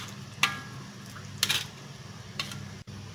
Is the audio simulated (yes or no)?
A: no